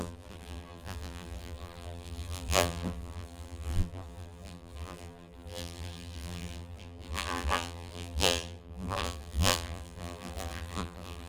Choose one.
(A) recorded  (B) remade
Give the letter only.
B